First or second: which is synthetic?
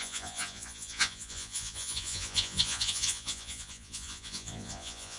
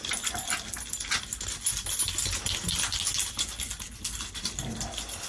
first